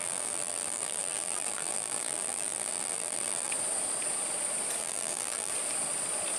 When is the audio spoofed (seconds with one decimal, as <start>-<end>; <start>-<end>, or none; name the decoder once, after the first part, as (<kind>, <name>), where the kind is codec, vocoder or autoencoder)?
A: 0.0-3.5 (vocoder, BigVGAN v2); 4.8-5.5